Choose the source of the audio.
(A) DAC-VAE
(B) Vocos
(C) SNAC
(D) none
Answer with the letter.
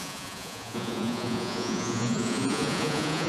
B